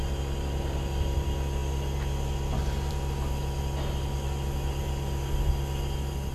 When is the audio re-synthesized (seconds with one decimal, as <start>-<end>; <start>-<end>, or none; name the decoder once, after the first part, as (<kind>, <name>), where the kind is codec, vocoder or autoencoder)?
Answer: none